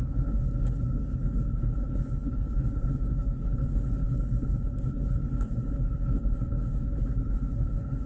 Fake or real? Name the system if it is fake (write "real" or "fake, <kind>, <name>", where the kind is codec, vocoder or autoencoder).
fake, codec, HILCodec